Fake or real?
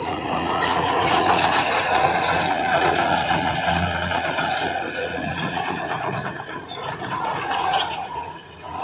fake